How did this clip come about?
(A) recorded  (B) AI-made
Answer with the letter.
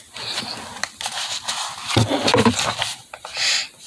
A